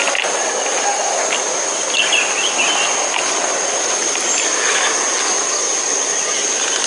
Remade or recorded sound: recorded